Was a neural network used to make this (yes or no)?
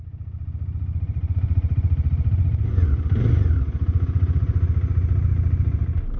no